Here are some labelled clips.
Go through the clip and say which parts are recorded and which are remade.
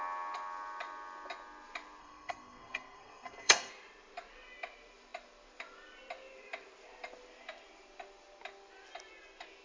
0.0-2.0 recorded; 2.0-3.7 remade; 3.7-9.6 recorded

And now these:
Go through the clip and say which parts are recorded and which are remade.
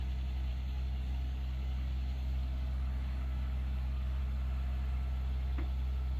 0.0-0.5 recorded; 0.5-4.2 remade; 4.2-6.2 recorded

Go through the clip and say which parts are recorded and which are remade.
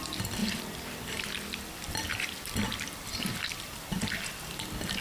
0.0-0.4 remade; 0.4-3.4 recorded; 3.4-5.0 remade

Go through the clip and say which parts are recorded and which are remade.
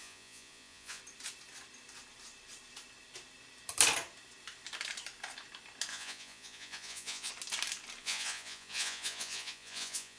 0.0-1.0 remade; 1.0-5.9 recorded; 5.9-7.3 remade; 7.3-8.0 recorded; 8.0-10.2 remade